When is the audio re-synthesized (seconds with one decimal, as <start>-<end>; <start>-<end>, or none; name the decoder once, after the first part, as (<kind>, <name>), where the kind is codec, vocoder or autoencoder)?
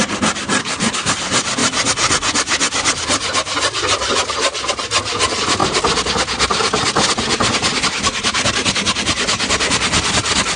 0.6-1.1 (codec, SNAC)